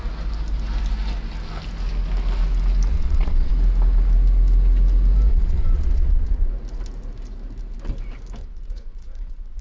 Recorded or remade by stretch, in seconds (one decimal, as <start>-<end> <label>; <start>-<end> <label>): 0.0-2.9 recorded; 2.9-3.5 remade; 3.5-5.3 recorded; 5.3-6.5 remade; 6.5-8.4 recorded; 8.4-9.6 remade